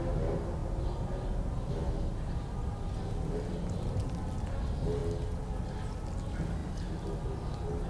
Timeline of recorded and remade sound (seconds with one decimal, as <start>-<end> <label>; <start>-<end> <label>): 0.0-7.9 recorded